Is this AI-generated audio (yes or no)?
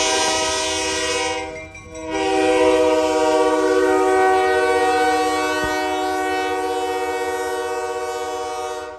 no